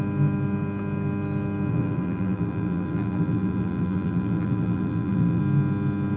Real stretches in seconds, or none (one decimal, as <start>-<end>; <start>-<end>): 0.0-1.7; 5.4-6.2